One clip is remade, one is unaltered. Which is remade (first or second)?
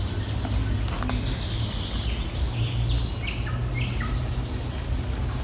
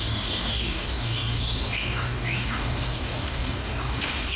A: second